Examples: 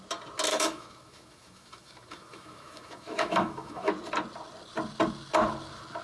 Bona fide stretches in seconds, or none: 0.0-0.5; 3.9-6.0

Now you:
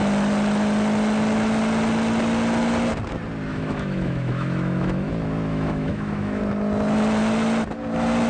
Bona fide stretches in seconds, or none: 0.0-3.5; 5.1-5.5; 6.4-8.3